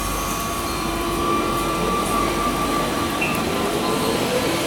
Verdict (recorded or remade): remade